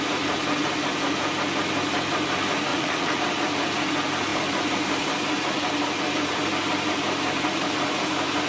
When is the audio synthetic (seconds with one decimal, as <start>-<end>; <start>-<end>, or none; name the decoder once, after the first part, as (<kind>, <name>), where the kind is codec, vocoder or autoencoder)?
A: 2.7-3.2 (vocoder, Vocos)